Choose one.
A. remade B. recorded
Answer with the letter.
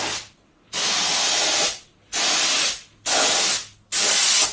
B